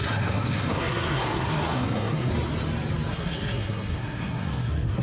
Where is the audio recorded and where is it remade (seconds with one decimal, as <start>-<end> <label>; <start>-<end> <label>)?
0.0-2.3 remade; 2.3-3.1 recorded; 3.1-5.0 remade